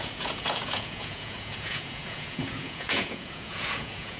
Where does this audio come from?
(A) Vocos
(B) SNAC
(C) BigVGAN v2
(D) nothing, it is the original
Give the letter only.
A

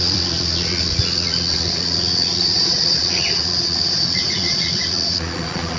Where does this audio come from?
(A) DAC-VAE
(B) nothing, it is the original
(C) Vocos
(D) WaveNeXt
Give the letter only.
C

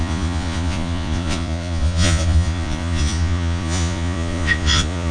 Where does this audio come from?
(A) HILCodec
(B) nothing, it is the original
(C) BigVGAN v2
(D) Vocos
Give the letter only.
D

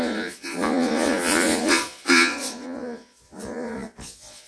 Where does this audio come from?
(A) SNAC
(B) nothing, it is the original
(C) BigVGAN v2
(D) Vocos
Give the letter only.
D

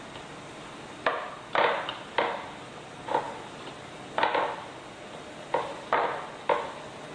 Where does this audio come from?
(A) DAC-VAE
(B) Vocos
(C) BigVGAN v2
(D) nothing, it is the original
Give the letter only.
D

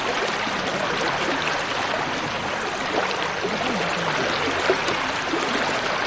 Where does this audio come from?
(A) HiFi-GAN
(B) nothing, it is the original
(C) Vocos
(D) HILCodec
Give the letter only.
B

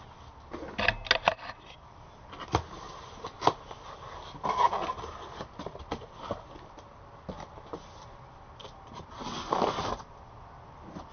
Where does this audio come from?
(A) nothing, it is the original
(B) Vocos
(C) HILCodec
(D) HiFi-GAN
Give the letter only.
A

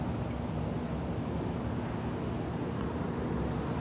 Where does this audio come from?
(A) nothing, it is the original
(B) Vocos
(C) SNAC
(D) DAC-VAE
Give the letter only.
A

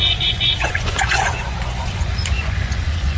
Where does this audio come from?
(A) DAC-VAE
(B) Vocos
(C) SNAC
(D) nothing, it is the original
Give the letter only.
B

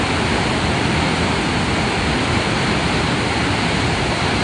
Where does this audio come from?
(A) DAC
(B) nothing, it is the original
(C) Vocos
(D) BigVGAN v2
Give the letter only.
B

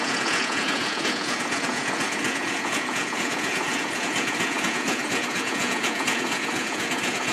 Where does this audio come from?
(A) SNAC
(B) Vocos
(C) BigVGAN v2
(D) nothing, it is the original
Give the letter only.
B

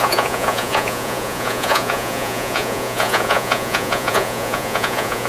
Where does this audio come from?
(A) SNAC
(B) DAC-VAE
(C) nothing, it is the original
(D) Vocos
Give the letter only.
D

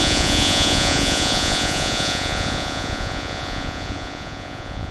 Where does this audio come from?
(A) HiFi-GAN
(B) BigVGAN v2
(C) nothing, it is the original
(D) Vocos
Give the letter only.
D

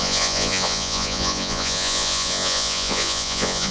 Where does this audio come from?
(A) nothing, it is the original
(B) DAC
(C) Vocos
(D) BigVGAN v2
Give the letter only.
C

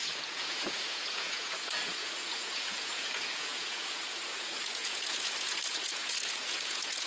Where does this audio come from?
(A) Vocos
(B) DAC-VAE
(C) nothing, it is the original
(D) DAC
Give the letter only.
A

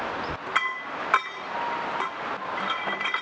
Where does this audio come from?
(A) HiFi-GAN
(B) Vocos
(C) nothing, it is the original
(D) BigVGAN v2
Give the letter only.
C